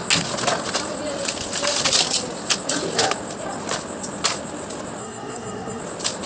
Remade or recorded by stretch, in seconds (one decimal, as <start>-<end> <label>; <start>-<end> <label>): 0.0-5.0 recorded; 5.0-5.8 remade; 5.8-6.3 recorded